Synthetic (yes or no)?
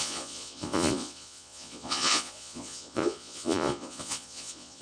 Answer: yes